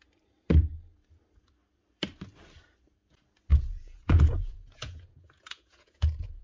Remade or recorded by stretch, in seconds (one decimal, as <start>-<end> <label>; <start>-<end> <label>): 0.0-3.5 recorded; 3.5-6.4 remade